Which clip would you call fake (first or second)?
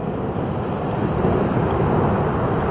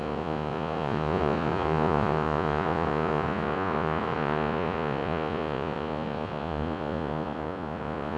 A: second